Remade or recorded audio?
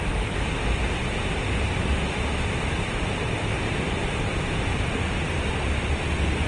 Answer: remade